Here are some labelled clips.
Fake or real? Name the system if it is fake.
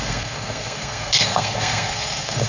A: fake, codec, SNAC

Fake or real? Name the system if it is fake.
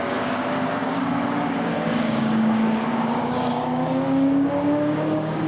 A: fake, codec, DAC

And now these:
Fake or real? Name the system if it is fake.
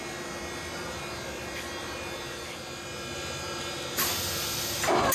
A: real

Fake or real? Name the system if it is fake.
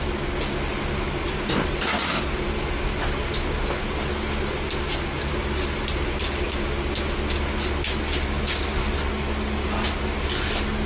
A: real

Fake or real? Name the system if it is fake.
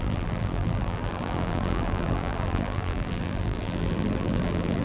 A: fake, vocoder, BigVGAN v2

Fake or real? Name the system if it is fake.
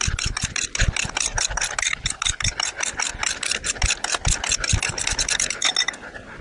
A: real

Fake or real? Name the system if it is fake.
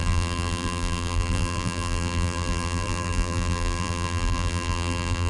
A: fake, vocoder, BigVGAN v2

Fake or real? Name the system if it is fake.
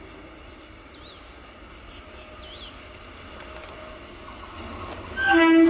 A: real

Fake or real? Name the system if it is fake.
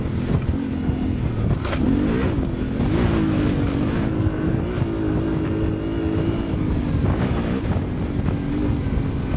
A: real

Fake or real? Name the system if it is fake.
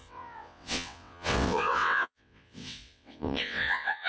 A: fake, vocoder, WaveNeXt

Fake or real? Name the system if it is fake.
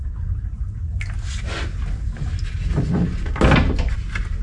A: real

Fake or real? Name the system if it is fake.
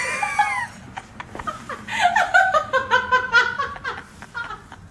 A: fake, vocoder, BigVGAN v2